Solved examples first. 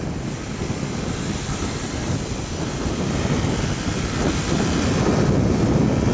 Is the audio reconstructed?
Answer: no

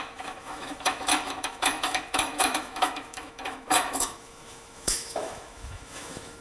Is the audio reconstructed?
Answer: yes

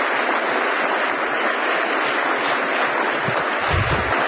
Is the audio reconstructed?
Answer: no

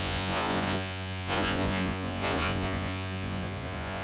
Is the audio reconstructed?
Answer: yes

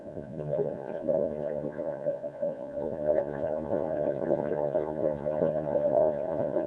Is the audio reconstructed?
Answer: yes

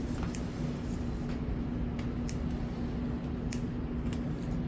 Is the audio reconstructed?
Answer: no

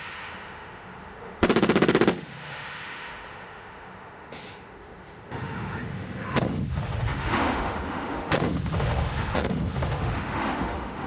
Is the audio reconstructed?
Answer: yes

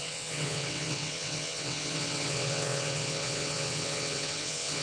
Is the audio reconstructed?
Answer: yes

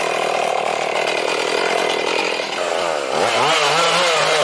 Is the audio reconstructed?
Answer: no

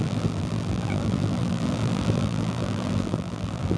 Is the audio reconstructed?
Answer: yes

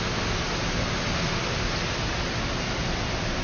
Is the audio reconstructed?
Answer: no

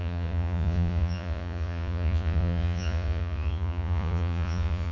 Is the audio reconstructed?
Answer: yes